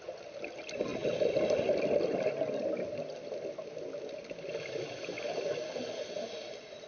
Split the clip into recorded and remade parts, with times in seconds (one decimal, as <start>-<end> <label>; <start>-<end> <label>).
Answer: 0.0-6.9 recorded